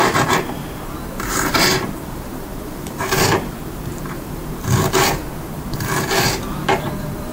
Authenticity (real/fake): fake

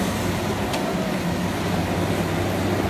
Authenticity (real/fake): real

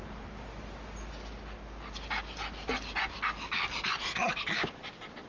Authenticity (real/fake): real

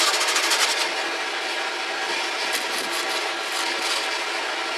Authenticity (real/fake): real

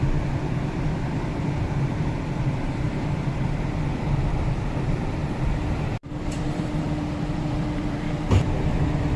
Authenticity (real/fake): fake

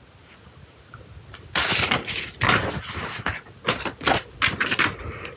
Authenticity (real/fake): real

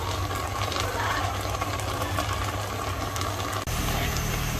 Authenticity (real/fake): real